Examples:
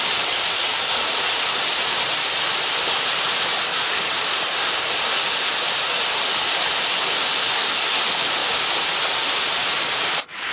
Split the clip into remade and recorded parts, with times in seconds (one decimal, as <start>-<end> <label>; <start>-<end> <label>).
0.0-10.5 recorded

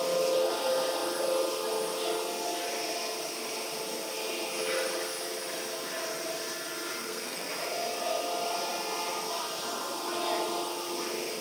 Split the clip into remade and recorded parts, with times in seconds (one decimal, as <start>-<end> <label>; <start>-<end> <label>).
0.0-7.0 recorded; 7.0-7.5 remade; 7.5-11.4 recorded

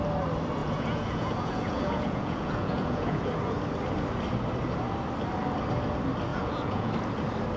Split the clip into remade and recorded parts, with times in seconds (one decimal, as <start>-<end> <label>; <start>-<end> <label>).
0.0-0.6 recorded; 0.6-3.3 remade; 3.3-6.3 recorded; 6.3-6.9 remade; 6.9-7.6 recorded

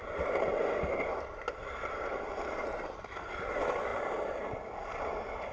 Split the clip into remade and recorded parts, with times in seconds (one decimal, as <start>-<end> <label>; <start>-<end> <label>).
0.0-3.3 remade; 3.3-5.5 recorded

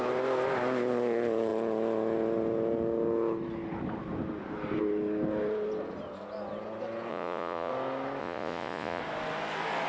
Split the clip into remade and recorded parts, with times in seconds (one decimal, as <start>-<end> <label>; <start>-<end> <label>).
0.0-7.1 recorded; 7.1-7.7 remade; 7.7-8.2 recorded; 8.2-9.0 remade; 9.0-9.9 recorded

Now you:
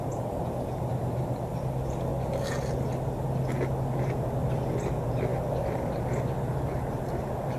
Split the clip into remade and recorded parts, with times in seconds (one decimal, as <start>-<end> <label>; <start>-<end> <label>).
0.0-7.6 recorded